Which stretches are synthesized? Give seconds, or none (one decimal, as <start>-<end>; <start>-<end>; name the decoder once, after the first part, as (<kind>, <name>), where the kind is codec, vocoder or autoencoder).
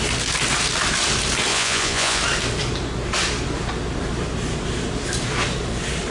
1.5-2.2 (vocoder, Vocos)